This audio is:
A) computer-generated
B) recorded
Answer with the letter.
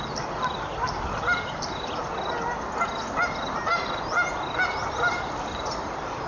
B